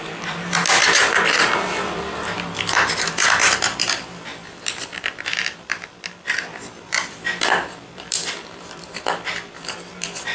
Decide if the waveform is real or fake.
fake